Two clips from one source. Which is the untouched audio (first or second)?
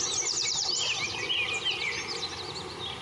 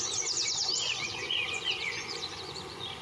first